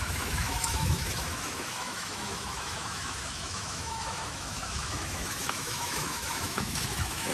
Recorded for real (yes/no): no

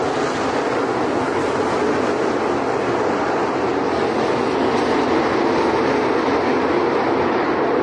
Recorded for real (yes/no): yes